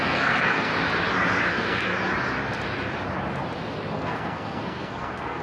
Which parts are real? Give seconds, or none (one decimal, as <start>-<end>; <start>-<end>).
0.7-1.5; 1.9-3.9